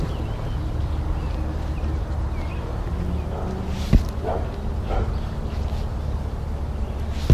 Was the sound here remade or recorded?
recorded